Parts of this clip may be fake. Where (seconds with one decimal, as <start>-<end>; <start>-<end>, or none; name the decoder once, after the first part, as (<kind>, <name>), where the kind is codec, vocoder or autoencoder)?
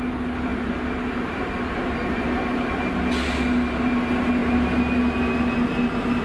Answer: none